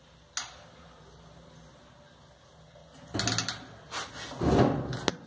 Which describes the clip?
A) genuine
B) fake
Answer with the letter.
A